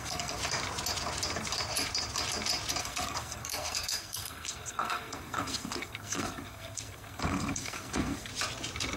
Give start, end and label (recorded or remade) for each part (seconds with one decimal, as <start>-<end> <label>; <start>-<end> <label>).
0.0-0.4 remade; 0.4-2.8 recorded; 2.8-8.3 remade; 8.3-9.0 recorded